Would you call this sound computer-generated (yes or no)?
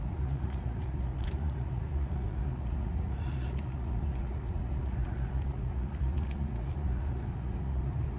yes